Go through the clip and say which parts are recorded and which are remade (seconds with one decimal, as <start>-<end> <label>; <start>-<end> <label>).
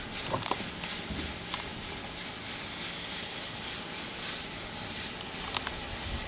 0.0-6.3 recorded